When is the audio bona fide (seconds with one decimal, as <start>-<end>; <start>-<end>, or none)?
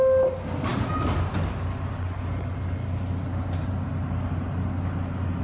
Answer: 0.0-5.4